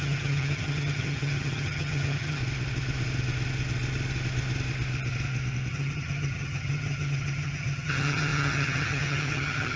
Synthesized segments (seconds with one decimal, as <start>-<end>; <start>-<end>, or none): 0.0-2.4; 5.7-9.8